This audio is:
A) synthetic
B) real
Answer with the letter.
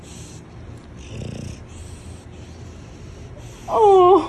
B